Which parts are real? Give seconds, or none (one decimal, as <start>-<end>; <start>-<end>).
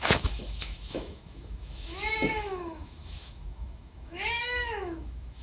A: none